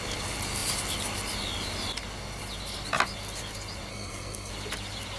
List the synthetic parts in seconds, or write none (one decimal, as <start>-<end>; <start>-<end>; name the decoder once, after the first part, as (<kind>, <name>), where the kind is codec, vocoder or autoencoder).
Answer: 3.9-4.5 (codec, SNAC)